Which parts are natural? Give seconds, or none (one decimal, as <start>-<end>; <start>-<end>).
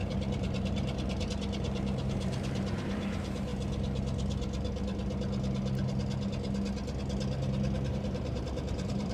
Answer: 3.5-7.9